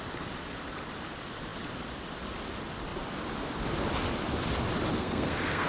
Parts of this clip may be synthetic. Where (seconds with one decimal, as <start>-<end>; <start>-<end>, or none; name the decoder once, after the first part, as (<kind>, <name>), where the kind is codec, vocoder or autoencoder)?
4.9-5.7 (codec, SNAC)